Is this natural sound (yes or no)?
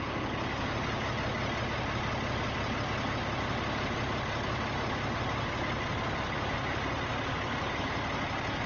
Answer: yes